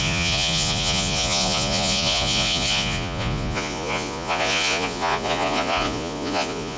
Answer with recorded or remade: remade